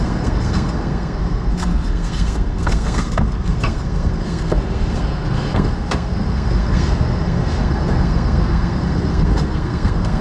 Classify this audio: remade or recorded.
remade